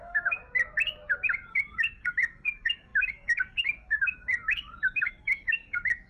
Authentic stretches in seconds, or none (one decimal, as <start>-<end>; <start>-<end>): 0.4-1.5